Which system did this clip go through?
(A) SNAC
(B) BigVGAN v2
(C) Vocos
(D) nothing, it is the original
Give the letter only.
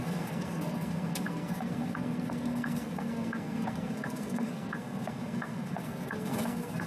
A